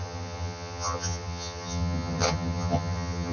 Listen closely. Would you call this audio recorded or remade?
remade